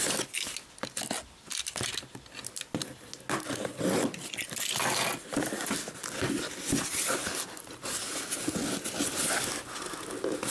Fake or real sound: real